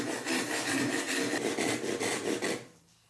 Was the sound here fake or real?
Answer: real